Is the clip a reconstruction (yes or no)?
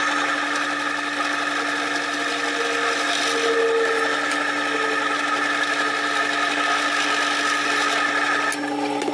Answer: no